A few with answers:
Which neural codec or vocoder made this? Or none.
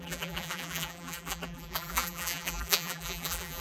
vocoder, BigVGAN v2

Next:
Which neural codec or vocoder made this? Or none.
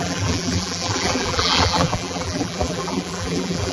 vocoder, BigVGAN v2